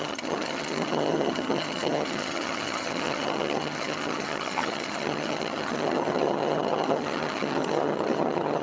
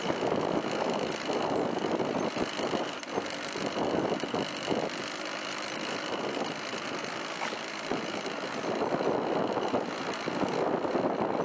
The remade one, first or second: first